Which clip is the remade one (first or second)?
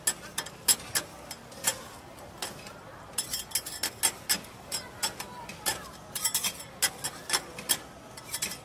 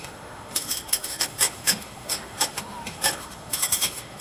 second